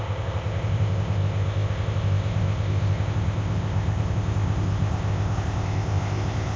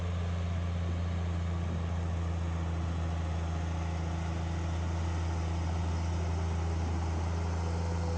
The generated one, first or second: first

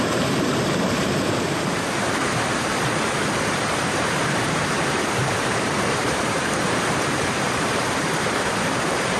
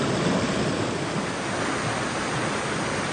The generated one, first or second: first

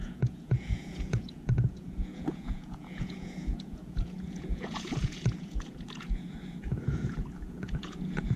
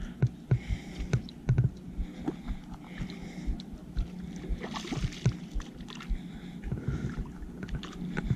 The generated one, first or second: first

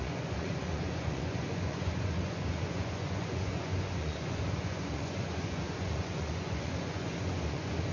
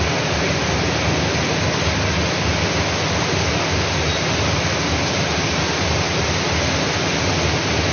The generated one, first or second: first